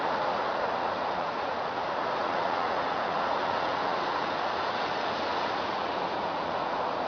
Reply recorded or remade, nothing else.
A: remade